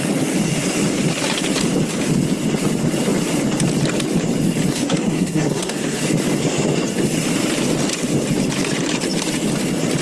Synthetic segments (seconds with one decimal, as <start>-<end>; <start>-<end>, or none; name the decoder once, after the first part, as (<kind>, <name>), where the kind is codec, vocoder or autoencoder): 4.7-6.0 (codec, SNAC)